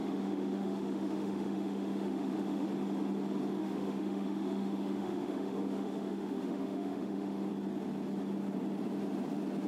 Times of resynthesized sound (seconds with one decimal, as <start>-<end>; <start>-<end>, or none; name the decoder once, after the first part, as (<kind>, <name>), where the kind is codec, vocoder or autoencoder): 0.0-2.7 (autoencoder, DAC-VAE); 3.6-7.5